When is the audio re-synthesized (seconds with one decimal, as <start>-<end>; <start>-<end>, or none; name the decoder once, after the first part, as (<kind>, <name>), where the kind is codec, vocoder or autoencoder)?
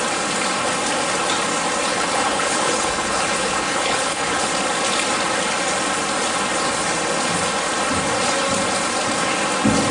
1.9-4.5 (codec, HILCodec)